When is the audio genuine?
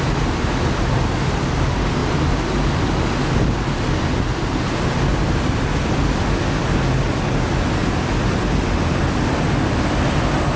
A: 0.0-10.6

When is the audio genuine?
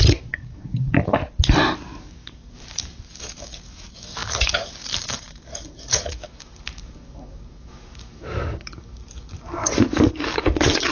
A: 1.2-2.0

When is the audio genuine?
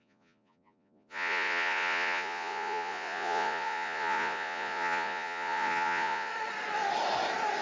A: 6.3-7.6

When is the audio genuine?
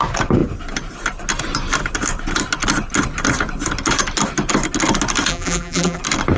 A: 0.0-5.3; 6.0-6.4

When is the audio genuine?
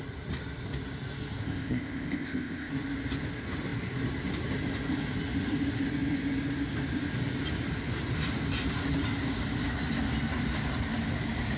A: 0.0-1.4; 2.7-11.6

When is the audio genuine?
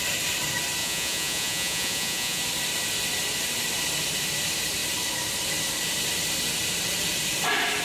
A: 0.0-0.8; 2.4-7.8